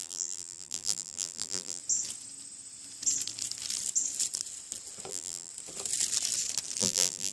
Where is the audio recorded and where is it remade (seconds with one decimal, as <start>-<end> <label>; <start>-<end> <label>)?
0.0-1.8 remade; 1.8-5.1 recorded; 5.1-5.5 remade; 5.5-6.8 recorded; 6.8-7.3 remade

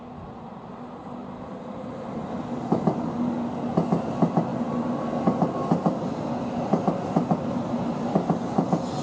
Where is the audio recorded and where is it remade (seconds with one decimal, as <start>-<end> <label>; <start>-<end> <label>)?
0.0-9.0 recorded

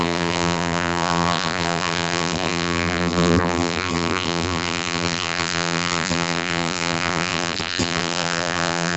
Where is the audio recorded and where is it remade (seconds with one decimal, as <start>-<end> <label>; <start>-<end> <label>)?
0.0-9.0 remade